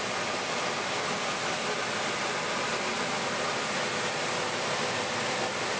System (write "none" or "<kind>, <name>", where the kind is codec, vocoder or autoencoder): none